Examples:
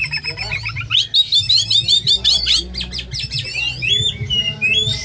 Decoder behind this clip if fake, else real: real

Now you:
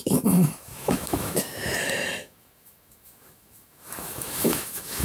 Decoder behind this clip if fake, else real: fake, autoencoder, DAC-VAE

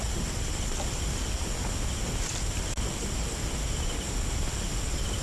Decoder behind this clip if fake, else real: real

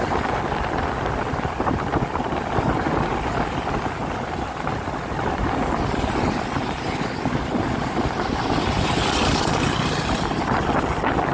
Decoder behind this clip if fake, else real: fake, vocoder, BigVGAN v2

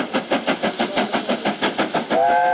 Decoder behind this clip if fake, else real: real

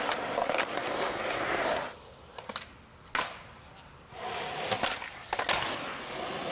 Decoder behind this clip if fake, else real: real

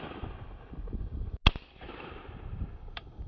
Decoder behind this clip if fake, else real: real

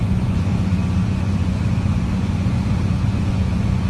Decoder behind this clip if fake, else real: fake, vocoder, Vocos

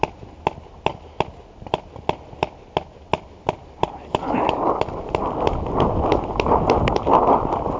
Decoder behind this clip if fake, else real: real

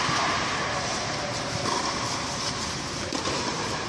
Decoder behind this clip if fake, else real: real